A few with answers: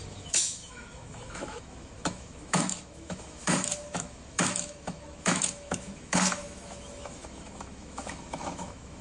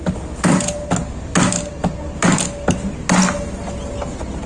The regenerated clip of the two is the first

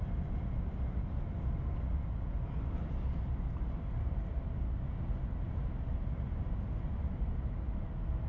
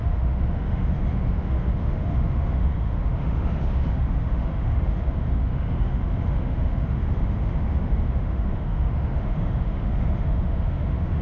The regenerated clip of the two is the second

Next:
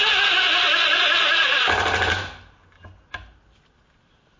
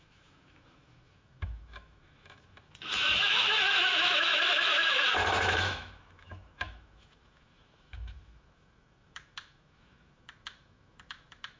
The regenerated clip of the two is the second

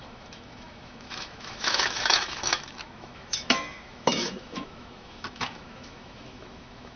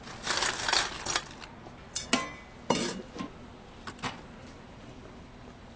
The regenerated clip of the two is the first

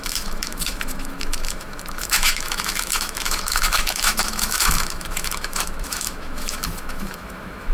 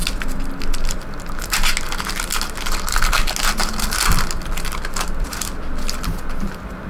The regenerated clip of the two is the first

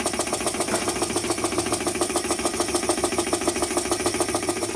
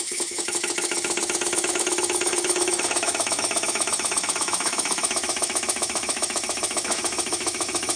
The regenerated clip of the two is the second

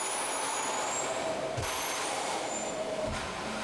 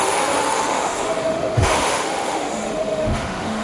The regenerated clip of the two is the second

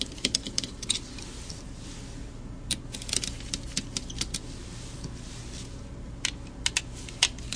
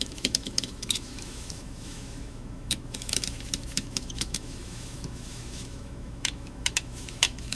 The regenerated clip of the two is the second